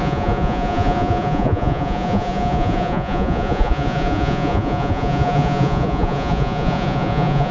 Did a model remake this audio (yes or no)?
yes